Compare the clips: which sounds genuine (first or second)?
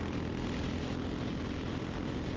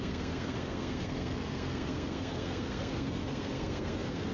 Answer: first